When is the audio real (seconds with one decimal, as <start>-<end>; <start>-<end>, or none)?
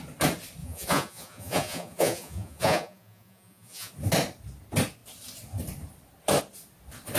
0.0-0.6; 3.9-7.2